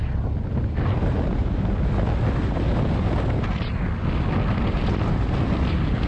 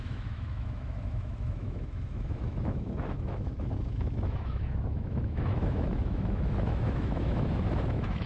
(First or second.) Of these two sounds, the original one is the first